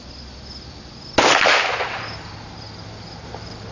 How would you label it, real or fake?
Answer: real